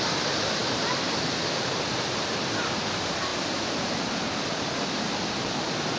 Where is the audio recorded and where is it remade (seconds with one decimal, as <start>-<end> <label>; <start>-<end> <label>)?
0.0-6.0 recorded